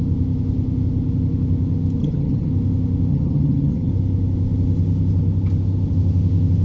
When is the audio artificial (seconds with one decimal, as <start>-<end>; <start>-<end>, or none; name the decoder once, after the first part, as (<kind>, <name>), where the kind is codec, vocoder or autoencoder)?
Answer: 2.0-2.5 (vocoder, HiFi-GAN); 3.1-3.9